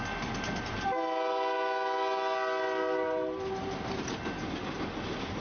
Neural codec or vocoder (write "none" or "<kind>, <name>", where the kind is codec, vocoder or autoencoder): none